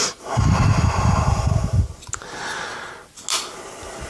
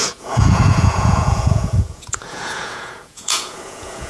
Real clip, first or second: first